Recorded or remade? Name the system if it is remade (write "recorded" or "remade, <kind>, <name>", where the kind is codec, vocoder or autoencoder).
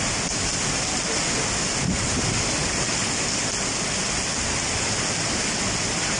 recorded